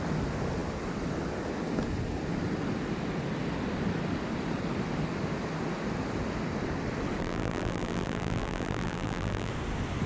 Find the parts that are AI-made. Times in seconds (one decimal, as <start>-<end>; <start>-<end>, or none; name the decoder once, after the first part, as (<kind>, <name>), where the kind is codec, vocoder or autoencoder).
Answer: 7.2-9.5 (vocoder, BigVGAN v2)